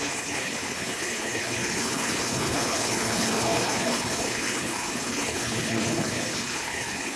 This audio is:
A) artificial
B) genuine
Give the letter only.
A